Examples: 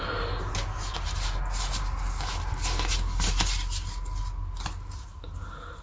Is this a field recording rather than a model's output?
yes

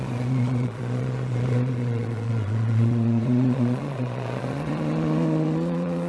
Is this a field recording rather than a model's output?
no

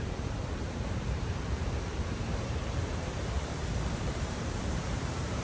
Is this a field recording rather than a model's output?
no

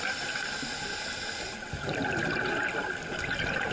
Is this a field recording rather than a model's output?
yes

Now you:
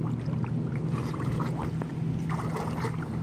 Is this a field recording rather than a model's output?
yes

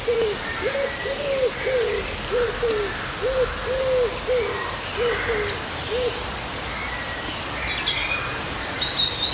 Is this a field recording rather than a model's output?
yes